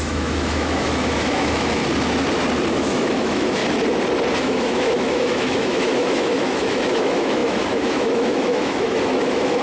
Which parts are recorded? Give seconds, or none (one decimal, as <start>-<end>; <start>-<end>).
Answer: 1.8-2.7; 3.6-4.4